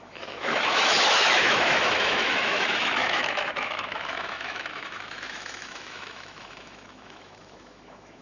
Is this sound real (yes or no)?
no